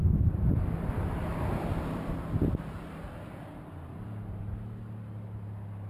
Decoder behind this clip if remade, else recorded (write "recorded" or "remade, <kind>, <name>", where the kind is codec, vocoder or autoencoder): recorded